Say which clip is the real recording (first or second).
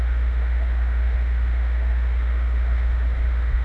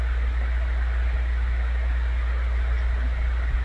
second